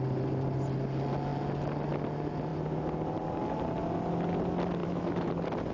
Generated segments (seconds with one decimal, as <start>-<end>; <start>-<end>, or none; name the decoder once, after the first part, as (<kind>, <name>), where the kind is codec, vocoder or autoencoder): 4.8-5.3 (autoencoder, DAC-VAE)